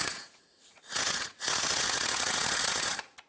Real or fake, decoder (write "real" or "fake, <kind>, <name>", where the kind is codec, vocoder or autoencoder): fake, vocoder, Vocos